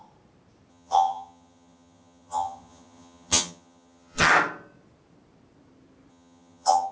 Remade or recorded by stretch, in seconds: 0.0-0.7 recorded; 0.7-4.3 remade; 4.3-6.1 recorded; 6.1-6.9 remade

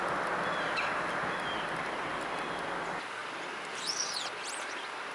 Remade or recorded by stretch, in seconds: 0.0-5.1 recorded

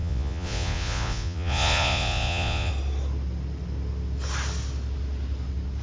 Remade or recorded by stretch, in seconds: 0.0-2.7 remade; 2.7-5.8 recorded

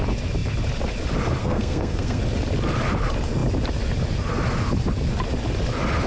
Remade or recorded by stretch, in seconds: 0.0-1.4 recorded; 1.4-2.2 remade; 2.2-6.1 recorded

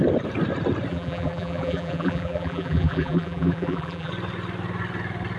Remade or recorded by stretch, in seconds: 0.0-0.9 recorded; 0.9-4.1 remade; 4.1-5.4 recorded

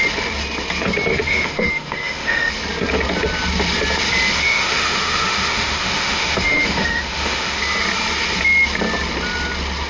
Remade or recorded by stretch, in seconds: 0.0-1.1 recorded; 1.1-2.5 remade; 2.5-4.3 recorded; 4.3-7.6 remade; 7.6-9.9 recorded

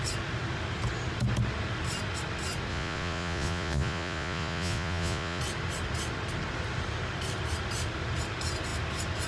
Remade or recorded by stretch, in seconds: 0.0-2.7 recorded; 2.7-5.4 remade; 5.4-9.3 recorded

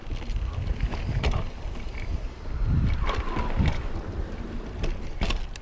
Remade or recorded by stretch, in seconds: 0.0-5.6 recorded